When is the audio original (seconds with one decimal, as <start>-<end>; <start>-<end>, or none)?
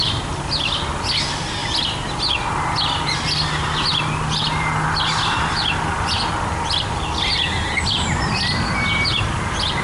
0.0-9.8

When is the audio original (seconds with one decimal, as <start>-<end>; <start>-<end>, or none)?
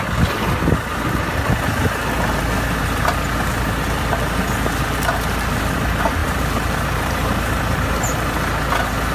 0.0-6.2; 7.9-9.1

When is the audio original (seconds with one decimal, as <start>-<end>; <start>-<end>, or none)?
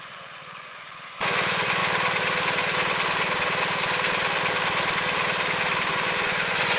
1.8-5.9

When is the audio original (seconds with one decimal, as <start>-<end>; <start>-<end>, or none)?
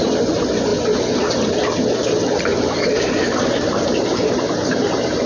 0.0-2.5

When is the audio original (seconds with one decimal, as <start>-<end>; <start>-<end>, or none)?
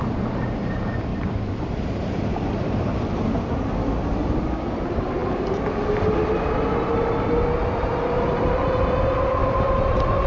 0.0-1.1; 3.6-9.4